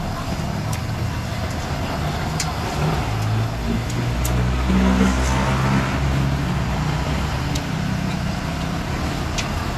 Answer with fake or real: real